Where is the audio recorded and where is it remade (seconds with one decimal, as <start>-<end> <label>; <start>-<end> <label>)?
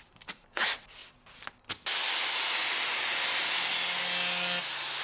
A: 0.0-5.0 recorded